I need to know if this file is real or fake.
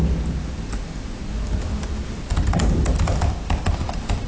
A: real